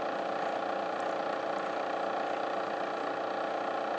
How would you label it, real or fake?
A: real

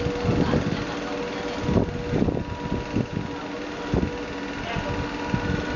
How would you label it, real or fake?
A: real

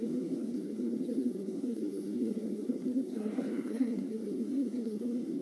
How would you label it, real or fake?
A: fake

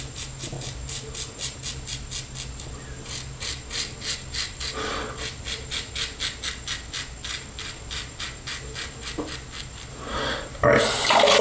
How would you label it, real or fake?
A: real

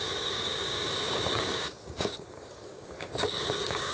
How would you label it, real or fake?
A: fake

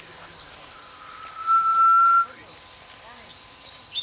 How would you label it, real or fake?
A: real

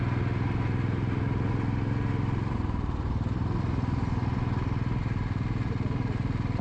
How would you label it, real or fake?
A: real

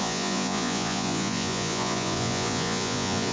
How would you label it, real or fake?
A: fake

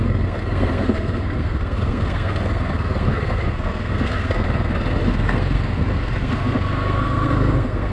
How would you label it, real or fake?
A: fake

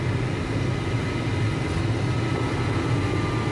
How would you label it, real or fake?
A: real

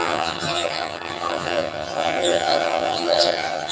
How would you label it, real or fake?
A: fake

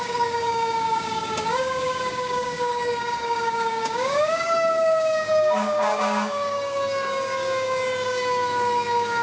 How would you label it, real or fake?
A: fake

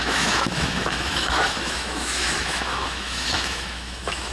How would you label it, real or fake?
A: fake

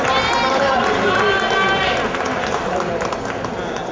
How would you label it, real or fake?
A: real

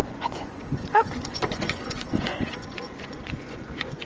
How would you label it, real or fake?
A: fake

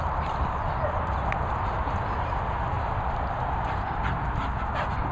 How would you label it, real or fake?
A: fake